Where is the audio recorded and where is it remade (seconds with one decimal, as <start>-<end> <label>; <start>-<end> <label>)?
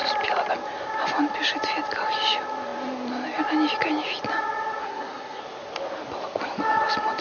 0.0-4.8 recorded; 4.8-5.4 remade; 5.4-7.2 recorded